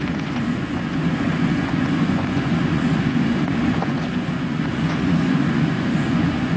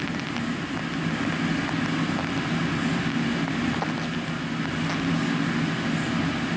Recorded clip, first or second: second